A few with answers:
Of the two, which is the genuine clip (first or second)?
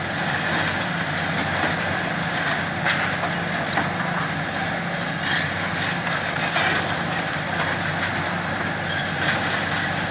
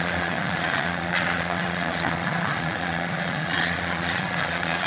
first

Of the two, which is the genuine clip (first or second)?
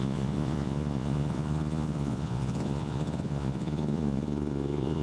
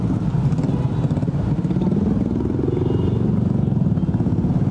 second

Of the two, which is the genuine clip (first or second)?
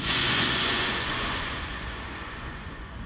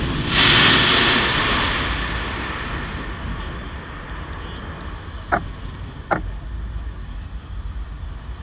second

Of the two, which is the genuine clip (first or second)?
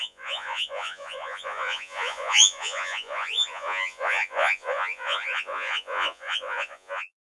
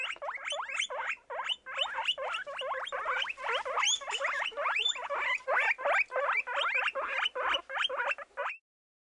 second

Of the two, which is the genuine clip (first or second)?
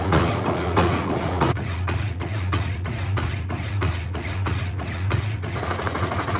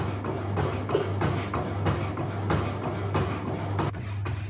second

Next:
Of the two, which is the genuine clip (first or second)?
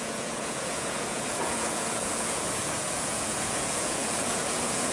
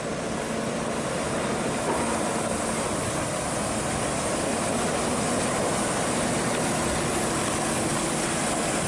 second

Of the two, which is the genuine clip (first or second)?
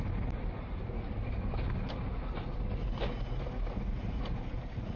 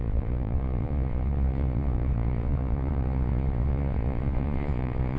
first